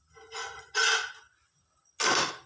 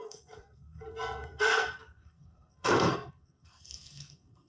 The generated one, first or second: second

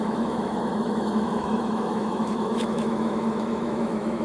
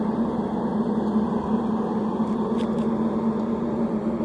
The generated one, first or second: first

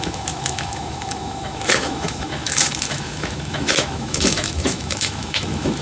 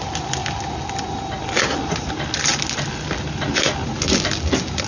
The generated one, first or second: first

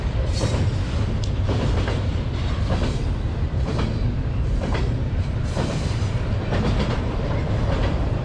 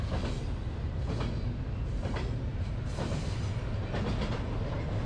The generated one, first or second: first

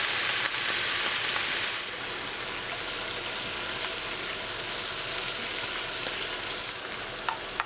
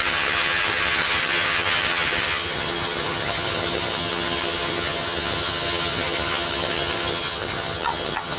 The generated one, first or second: second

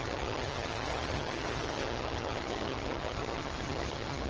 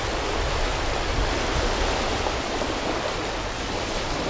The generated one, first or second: first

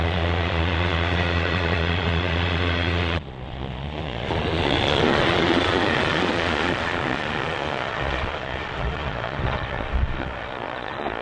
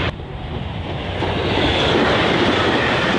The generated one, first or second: first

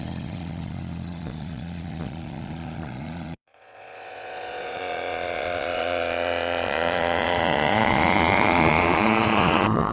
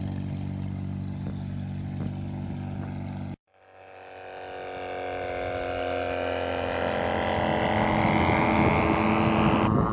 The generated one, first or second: first